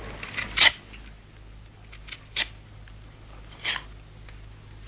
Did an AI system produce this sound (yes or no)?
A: no